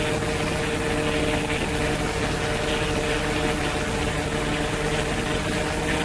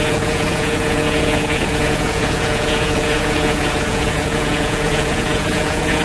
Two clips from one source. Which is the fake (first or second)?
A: second